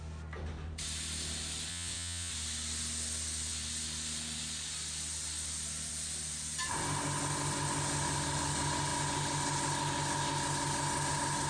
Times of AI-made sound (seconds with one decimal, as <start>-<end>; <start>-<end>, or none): 1.7-2.3